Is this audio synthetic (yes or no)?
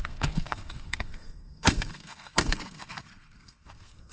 yes